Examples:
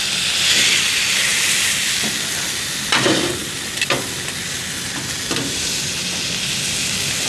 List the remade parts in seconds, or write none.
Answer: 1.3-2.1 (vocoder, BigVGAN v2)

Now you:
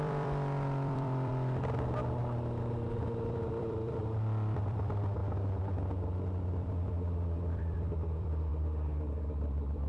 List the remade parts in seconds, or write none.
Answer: 0.0-1.3 (vocoder, BigVGAN v2); 2.9-5.2; 6.4-9.9

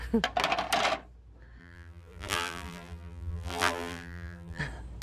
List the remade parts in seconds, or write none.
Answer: 1.6-4.6 (vocoder, BigVGAN v2)

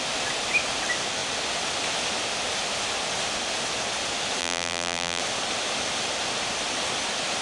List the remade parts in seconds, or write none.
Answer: 4.4-5.2 (vocoder, BigVGAN v2)

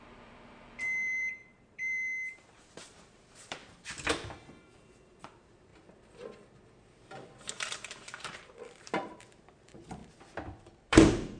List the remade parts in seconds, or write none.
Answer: 0.0-3.6 (vocoder, BigVGAN v2); 4.6-5.7; 7.5-10.0; 10.9-11.4